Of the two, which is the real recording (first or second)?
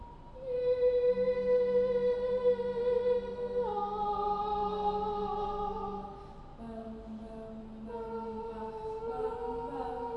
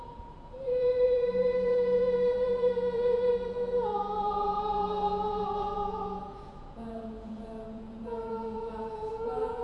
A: first